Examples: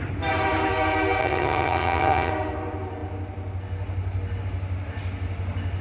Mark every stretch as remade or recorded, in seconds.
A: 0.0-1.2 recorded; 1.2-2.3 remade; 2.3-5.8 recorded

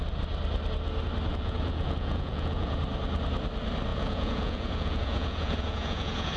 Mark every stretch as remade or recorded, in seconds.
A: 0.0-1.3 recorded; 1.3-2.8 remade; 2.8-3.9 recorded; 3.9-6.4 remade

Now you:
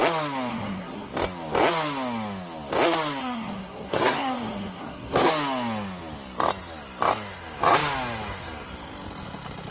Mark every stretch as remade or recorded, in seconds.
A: 0.0-0.5 recorded; 0.5-1.1 remade; 1.1-3.2 recorded; 3.2-5.3 remade; 5.3-9.7 recorded

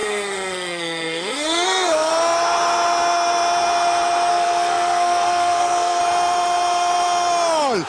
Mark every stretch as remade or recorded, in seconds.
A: 0.0-2.1 remade; 2.1-4.3 recorded; 4.3-6.0 remade; 6.0-7.9 recorded

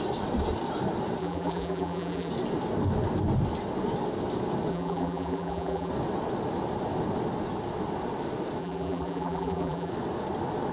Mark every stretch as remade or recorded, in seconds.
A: 0.0-1.2 recorded; 1.2-2.3 remade; 2.3-4.7 recorded; 4.7-5.9 remade; 5.9-8.6 recorded; 8.6-9.9 remade; 9.9-10.7 recorded

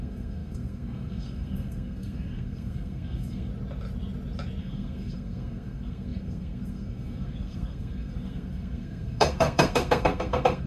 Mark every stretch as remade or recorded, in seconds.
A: 0.0-3.5 remade; 3.5-4.6 recorded; 4.6-10.7 remade

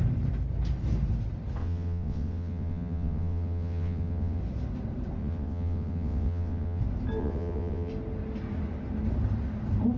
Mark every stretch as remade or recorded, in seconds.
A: 0.0-1.6 recorded; 1.6-4.4 remade; 4.4-5.2 recorded; 5.2-6.8 remade; 6.8-7.2 recorded; 7.2-7.9 remade; 7.9-10.0 recorded

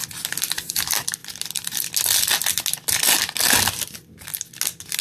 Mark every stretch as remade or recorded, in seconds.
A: 0.0-5.0 recorded